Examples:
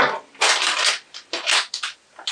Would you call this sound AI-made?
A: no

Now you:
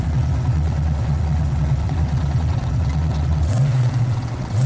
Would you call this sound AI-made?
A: yes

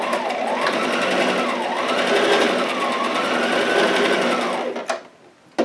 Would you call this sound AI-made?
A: no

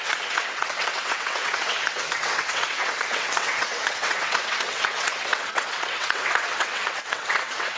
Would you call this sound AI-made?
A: yes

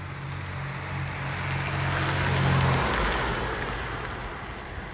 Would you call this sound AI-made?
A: no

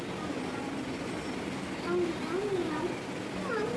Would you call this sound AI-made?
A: no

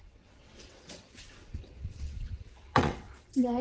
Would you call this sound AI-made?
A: yes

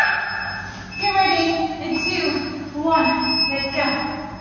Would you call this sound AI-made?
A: no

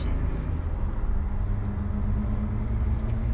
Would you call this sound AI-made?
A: no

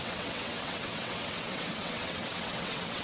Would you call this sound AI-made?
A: yes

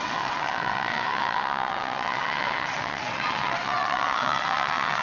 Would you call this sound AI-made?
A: yes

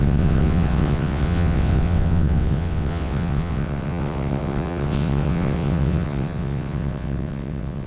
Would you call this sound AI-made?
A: yes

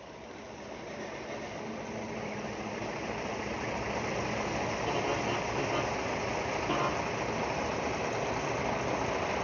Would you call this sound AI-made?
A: no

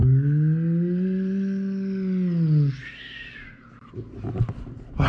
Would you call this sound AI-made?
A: no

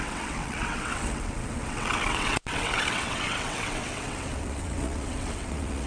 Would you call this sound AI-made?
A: yes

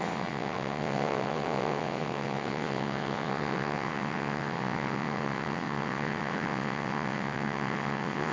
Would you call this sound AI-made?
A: yes